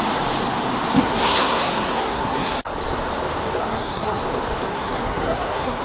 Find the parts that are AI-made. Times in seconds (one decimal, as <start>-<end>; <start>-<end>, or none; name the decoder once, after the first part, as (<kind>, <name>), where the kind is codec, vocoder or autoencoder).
1.0-2.7 (codec, SNAC); 3.6-4.2; 4.7-5.8